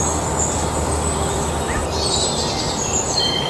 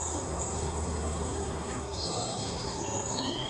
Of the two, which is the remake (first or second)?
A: second